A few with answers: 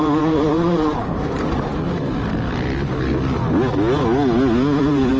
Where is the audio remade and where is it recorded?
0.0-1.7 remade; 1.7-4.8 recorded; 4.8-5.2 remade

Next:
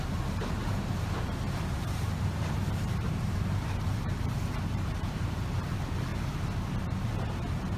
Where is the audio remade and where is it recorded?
0.0-6.1 remade; 6.1-6.8 recorded; 6.8-7.8 remade

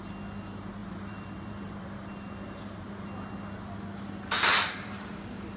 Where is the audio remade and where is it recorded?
0.0-0.8 recorded; 0.8-2.7 remade; 2.7-4.5 recorded; 4.5-5.1 remade; 5.1-5.6 recorded

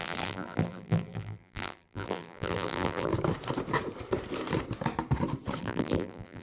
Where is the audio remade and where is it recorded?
0.0-3.1 remade; 3.1-5.6 recorded; 5.6-6.4 remade

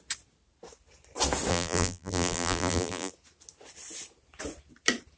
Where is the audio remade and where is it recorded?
0.0-1.5 recorded; 1.5-3.1 remade; 3.1-5.2 recorded

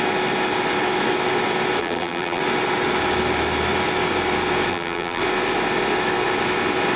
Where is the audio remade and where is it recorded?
0.0-1.8 recorded; 1.8-2.4 remade; 2.4-4.7 recorded; 4.7-5.2 remade; 5.2-7.0 recorded

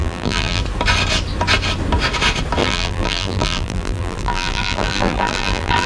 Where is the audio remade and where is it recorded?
0.0-0.6 remade; 0.6-2.6 recorded; 2.6-5.9 remade